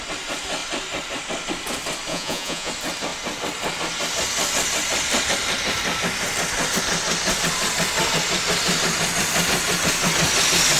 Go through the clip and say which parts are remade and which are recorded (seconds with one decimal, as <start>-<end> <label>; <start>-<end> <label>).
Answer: 0.0-2.1 recorded; 2.1-2.7 remade; 2.7-10.8 recorded